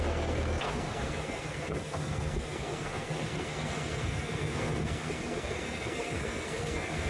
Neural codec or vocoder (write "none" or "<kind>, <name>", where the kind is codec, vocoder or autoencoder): codec, SNAC